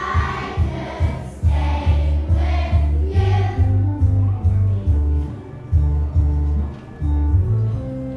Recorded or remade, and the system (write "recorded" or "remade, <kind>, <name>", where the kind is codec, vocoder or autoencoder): recorded